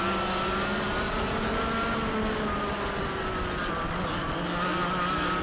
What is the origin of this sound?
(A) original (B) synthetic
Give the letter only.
A